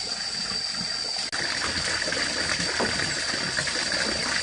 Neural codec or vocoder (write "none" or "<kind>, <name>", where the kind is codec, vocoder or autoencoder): none